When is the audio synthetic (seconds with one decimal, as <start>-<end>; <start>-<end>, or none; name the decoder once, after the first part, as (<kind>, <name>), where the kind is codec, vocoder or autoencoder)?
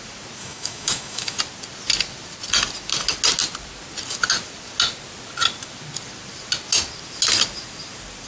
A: 0.4-1.4 (autoencoder, DAC-VAE)